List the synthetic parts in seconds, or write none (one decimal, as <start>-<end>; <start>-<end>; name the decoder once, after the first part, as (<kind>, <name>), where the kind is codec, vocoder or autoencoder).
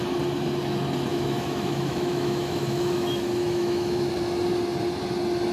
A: 1.1-4.1 (autoencoder, DAC-VAE)